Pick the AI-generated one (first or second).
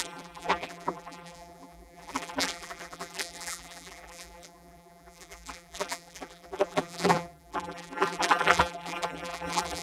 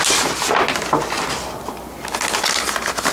first